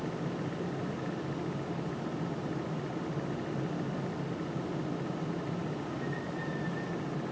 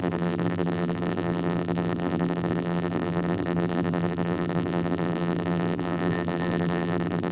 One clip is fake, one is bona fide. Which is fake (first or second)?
second